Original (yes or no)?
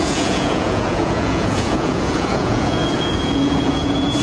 no